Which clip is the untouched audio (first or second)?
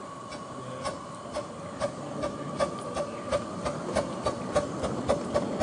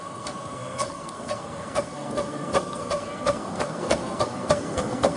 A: first